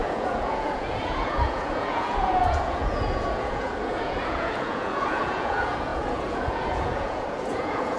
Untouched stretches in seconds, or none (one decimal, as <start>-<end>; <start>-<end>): none